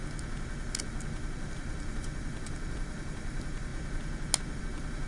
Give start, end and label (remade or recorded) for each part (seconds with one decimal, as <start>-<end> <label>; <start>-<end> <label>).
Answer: 0.0-0.8 recorded; 0.8-3.7 remade; 3.7-4.6 recorded; 4.6-5.1 remade